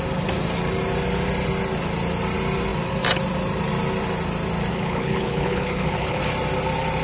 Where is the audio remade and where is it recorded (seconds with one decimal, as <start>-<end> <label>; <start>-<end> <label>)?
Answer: 0.0-4.7 recorded; 4.7-6.2 remade; 6.2-7.0 recorded